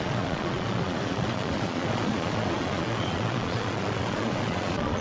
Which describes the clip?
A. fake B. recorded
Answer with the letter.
A